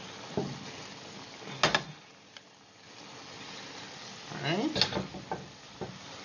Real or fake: real